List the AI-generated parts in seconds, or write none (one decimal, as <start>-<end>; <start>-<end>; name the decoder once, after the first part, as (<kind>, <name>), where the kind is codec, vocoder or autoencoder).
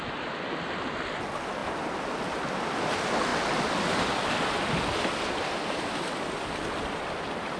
none